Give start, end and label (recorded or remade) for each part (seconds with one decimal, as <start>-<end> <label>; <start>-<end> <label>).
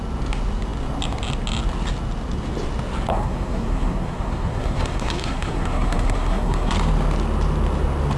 0.0-3.1 recorded; 3.1-6.7 remade; 6.7-8.2 recorded